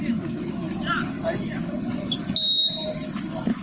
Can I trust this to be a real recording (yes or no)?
yes